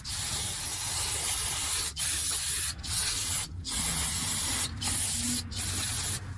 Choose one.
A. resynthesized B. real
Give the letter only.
B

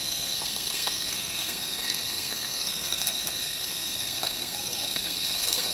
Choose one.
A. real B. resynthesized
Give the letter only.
B